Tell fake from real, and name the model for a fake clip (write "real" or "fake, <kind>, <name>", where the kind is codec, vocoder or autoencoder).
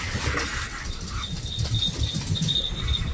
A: real